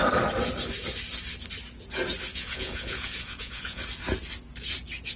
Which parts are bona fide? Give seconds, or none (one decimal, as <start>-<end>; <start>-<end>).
0.0-2.3; 3.8-5.2